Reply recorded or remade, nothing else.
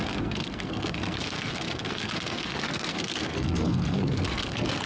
remade